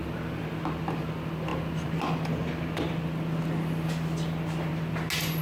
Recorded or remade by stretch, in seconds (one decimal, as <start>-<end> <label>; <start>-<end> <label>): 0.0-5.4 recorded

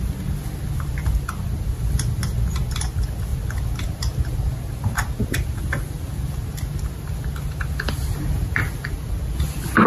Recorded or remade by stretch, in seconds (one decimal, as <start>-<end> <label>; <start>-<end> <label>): 0.0-9.9 recorded

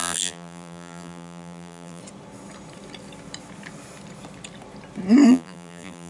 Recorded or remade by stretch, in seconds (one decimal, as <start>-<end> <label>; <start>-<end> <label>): 0.0-2.0 remade; 2.0-5.3 recorded; 5.3-6.1 remade

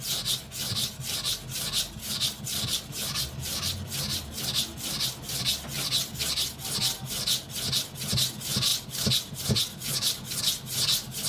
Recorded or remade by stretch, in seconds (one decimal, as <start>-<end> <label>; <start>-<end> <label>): 0.0-11.3 recorded

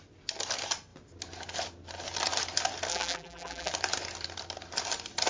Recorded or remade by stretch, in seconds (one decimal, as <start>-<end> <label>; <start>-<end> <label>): 0.0-2.9 recorded; 2.9-3.7 remade; 3.7-5.3 recorded